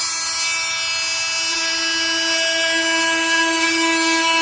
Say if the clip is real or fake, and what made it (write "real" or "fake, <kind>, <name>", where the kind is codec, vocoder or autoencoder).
real